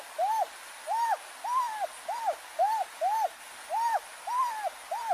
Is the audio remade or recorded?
recorded